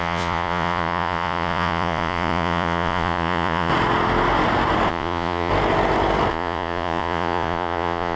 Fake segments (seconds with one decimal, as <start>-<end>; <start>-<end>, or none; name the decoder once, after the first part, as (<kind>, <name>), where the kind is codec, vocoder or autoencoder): 0.0-3.7 (vocoder, Vocos); 4.9-5.5; 6.3-8.2